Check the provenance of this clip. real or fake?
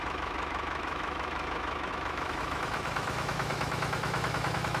fake